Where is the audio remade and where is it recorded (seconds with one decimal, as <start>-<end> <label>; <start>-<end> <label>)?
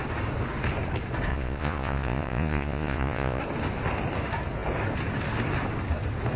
0.0-1.3 recorded; 1.3-3.4 remade; 3.4-6.4 recorded